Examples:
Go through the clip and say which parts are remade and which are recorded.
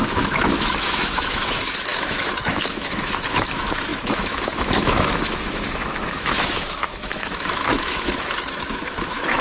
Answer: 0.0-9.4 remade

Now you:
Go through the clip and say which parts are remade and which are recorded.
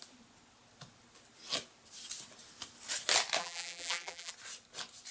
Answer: 0.0-3.4 recorded; 3.4-4.3 remade; 4.3-5.1 recorded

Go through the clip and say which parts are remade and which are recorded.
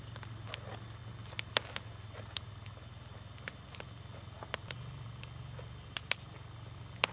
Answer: 0.0-7.1 recorded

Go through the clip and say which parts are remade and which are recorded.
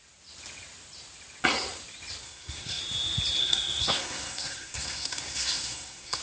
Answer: 0.0-2.2 recorded; 2.2-2.8 remade; 2.8-3.4 recorded; 3.4-6.2 remade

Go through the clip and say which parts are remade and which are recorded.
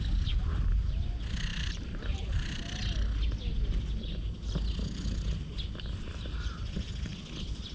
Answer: 0.0-1.5 recorded; 1.5-2.6 remade; 2.6-7.7 recorded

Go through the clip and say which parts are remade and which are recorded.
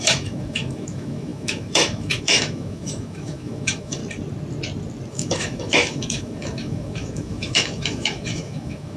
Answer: 0.0-4.0 remade; 4.0-5.1 recorded; 5.1-9.0 remade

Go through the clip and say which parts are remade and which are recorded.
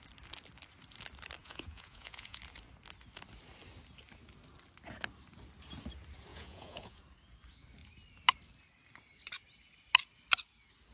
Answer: 0.0-1.4 recorded; 1.4-2.4 remade; 2.4-6.3 recorded; 6.3-7.0 remade; 7.0-10.9 recorded